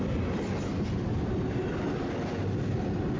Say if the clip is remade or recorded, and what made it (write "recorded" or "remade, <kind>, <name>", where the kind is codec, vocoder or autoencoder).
recorded